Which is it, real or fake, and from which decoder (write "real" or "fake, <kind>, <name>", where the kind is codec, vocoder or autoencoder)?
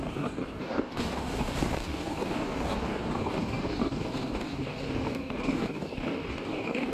fake, codec, DAC